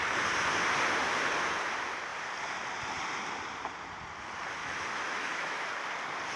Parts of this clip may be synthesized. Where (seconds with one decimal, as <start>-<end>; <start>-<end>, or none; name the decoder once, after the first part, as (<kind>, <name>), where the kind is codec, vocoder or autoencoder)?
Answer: 4.6-5.7 (autoencoder, DAC-VAE)